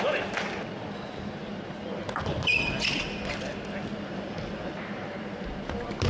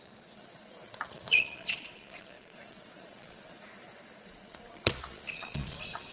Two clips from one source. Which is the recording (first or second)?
first